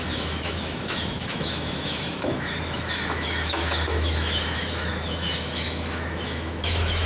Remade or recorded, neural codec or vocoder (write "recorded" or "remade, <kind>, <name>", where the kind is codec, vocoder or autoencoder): remade, autoencoder, DAC-VAE